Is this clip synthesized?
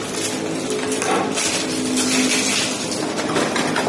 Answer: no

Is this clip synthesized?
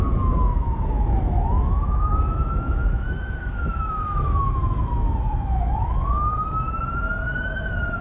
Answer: yes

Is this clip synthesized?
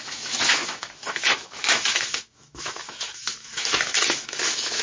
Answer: yes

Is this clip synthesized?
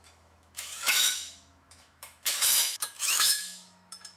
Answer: yes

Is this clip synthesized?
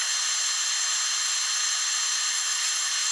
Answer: no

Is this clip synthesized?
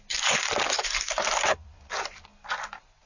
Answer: no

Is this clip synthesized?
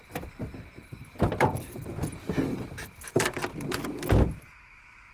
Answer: no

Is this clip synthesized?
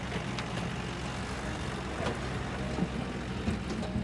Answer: no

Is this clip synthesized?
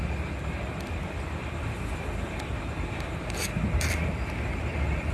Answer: no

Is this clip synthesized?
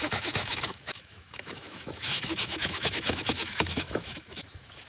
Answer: yes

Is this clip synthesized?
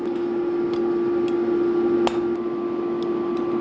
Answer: no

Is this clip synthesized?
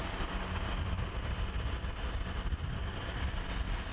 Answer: no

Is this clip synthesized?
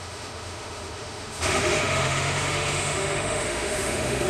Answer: yes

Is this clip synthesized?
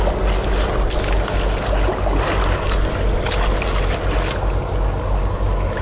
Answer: no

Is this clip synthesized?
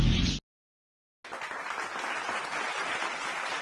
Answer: no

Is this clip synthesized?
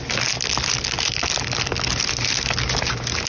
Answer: no